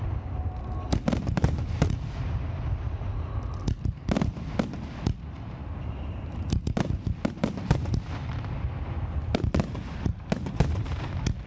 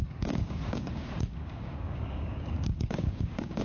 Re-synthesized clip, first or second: second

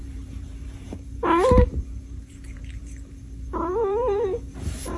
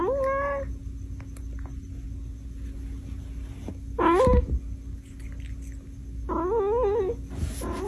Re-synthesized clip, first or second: first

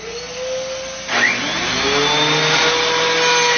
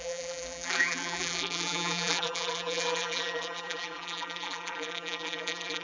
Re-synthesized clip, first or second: second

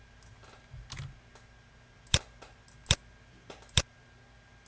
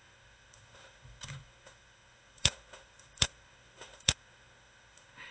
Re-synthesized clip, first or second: second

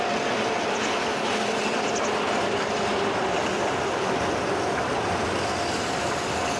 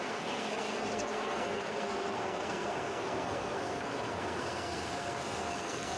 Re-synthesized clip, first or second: second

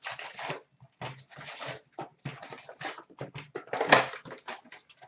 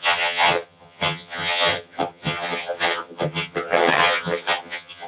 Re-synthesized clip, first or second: second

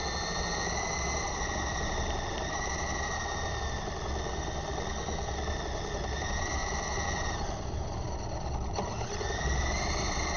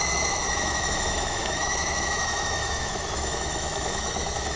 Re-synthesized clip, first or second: second